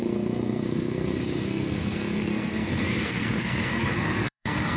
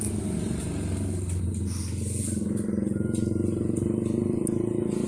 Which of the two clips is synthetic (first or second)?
first